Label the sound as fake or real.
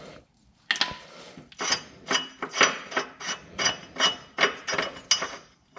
real